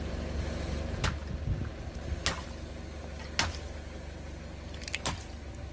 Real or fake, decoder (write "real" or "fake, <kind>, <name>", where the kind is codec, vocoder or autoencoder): real